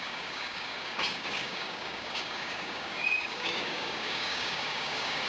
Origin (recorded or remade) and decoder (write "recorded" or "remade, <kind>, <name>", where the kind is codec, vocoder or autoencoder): remade, codec, DAC